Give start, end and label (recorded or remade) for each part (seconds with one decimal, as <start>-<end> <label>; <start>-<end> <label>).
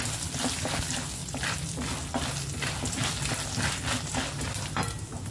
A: 0.0-5.3 recorded